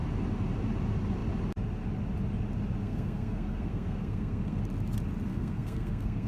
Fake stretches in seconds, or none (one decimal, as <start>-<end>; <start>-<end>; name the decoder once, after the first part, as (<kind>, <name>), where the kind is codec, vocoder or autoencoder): 2.8-4.6 (codec, SNAC); 5.3-6.3